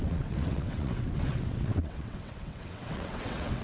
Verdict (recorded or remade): remade